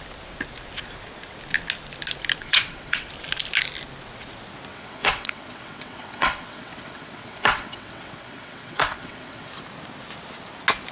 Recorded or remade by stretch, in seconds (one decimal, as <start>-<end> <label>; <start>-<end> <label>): 0.0-2.4 recorded; 2.4-3.1 remade; 3.1-4.7 recorded; 4.7-9.5 remade; 9.5-10.9 recorded